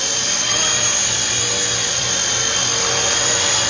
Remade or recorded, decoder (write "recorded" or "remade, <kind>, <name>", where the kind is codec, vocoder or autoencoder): remade, vocoder, BigVGAN v2